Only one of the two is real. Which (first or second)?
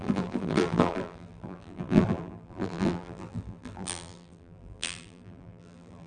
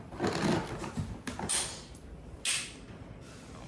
second